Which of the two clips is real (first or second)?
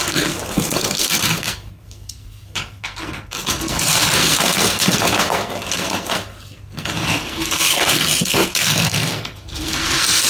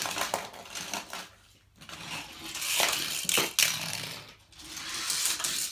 second